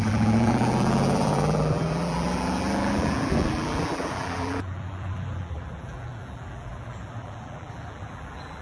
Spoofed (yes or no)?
yes